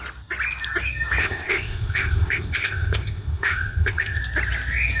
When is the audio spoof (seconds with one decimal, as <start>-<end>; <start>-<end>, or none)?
1.2-4.2